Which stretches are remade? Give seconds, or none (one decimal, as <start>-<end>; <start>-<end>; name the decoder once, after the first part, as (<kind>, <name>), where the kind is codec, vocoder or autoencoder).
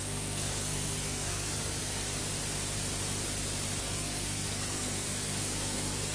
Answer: 0.0-2.2 (codec, SNAC); 3.8-6.1